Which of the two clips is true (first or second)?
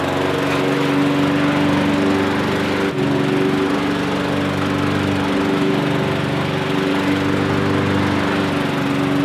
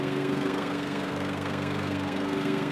first